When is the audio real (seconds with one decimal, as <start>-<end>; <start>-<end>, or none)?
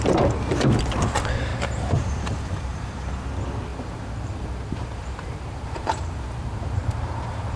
0.0-1.5; 3.1-3.7